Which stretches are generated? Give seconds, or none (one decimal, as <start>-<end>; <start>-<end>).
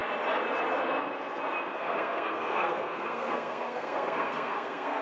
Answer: 1.7-5.0